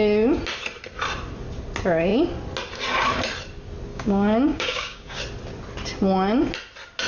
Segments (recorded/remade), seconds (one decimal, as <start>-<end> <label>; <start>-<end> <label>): 0.0-3.9 recorded; 3.9-5.2 remade; 5.2-7.1 recorded